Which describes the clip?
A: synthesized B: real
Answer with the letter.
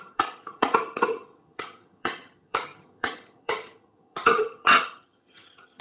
A